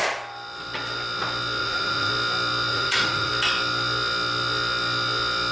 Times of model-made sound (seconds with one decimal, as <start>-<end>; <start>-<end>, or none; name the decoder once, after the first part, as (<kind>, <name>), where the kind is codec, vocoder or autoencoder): 1.6-2.1 (vocoder, Vocos); 2.7-3.3